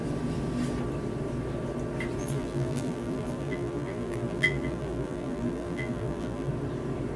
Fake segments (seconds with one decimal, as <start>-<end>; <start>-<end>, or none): 2.2-6.5